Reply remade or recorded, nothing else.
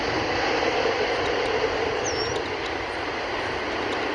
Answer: remade